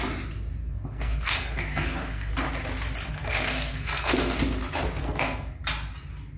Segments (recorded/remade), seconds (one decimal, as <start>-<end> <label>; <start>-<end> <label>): 0.0-0.6 recorded; 0.6-2.3 remade; 2.3-3.1 recorded; 3.1-4.4 remade; 4.4-5.0 recorded; 5.0-5.6 remade; 5.6-6.4 recorded

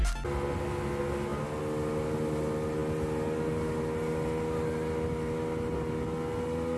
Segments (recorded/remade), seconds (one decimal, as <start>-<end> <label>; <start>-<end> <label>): 0.0-6.8 recorded

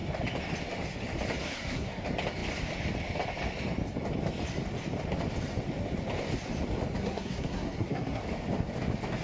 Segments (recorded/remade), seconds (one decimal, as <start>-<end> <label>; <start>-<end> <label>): 0.0-1.4 recorded; 1.4-2.0 remade; 2.0-7.0 recorded; 7.0-8.2 remade; 8.2-9.2 recorded

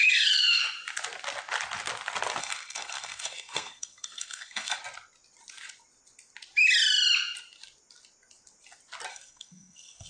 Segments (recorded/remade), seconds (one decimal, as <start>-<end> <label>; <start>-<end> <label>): 0.0-0.6 remade; 0.6-2.4 recorded; 2.4-4.8 remade; 4.8-9.1 recorded; 9.1-10.1 remade

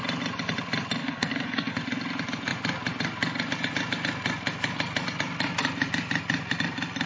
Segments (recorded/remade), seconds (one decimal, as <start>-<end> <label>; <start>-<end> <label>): 0.0-1.0 recorded; 1.0-1.8 remade; 1.8-7.1 recorded

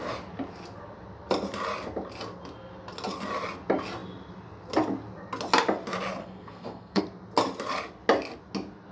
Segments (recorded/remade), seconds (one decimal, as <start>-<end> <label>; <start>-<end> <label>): 0.0-6.2 recorded; 6.2-7.0 remade; 7.0-8.9 recorded

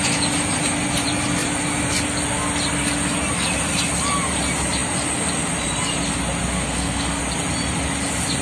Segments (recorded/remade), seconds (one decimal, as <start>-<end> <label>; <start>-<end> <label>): 0.0-6.5 recorded; 6.5-7.2 remade; 7.2-8.4 recorded